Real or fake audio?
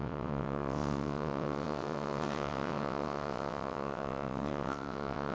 fake